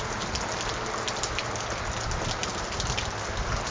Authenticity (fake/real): real